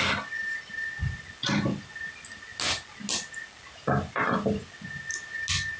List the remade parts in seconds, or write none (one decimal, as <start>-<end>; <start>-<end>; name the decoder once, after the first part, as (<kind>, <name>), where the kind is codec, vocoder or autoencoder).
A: none